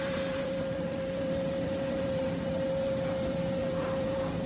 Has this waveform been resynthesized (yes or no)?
yes